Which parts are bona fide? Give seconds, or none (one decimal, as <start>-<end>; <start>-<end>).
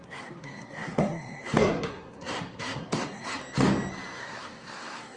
3.4-4.2